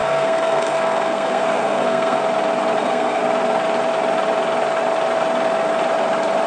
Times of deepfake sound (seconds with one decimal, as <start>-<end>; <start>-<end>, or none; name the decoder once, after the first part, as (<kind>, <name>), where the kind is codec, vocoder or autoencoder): 0.0-2.2 (codec, SNAC); 2.8-3.2